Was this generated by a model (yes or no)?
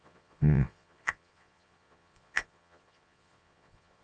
yes